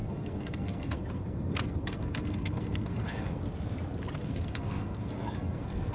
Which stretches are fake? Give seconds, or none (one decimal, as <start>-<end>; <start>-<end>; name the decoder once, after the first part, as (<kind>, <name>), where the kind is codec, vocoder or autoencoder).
0.0-3.4 (codec, SNAC); 4.2-5.9